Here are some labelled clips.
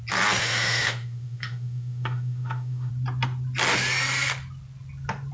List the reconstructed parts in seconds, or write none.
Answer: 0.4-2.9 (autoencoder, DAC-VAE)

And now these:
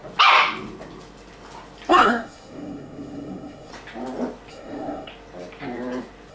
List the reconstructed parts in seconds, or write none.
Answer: 1.9-3.7 (codec, SNAC); 4.5-5.1

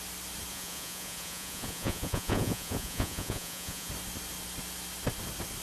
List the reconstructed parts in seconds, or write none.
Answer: 0.5-3.9 (vocoder, Vocos)

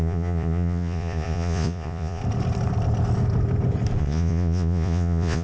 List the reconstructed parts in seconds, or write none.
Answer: 0.0-2.2 (vocoder, Vocos); 4.0-5.4